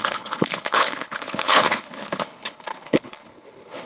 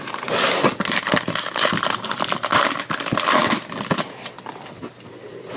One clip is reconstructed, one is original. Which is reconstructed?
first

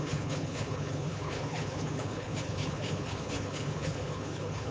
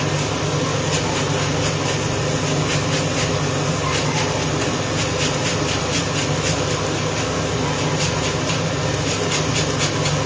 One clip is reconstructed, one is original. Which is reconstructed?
first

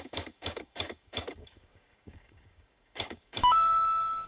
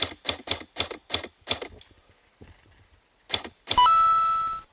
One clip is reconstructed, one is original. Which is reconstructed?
first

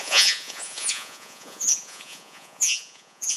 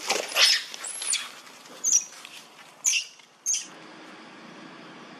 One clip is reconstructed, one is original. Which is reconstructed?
first